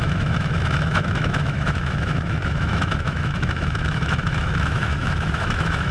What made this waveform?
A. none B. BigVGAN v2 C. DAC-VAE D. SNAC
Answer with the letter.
C